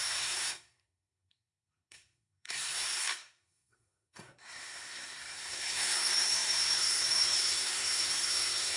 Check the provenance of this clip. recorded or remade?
remade